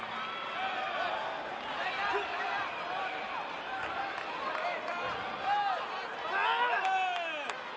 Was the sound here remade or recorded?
recorded